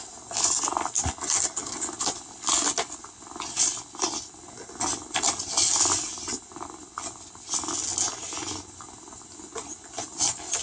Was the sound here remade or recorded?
recorded